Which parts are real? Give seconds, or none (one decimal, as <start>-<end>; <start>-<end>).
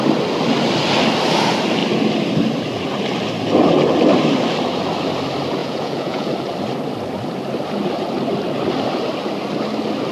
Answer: 0.0-5.6; 6.3-10.1